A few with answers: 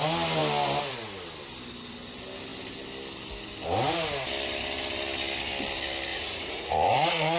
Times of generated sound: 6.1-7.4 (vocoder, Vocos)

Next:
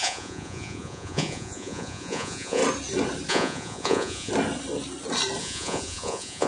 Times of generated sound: 0.0-2.6 (vocoder, Vocos); 3.3-4.3; 5.4-6.5

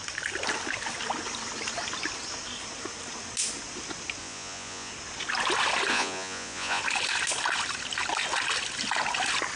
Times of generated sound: 4.2-4.9 (vocoder, Vocos); 5.9-6.8

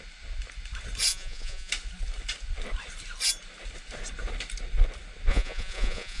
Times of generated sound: 1.1-1.7 (vocoder, Vocos); 5.3-6.2

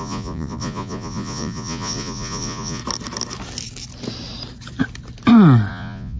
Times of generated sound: 0.0-2.8 (vocoder, Vocos); 5.7-6.2